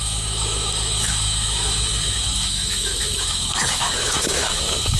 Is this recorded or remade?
remade